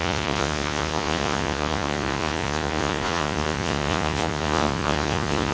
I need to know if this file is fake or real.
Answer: fake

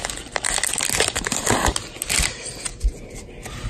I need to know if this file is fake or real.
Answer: real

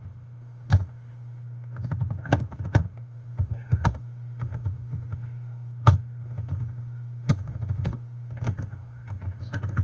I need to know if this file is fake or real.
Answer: fake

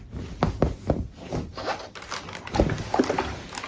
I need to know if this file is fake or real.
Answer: real